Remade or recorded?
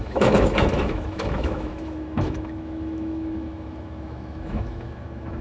remade